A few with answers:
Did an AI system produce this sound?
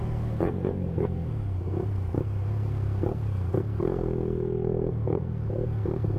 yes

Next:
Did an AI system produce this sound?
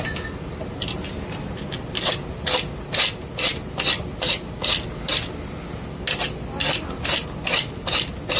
no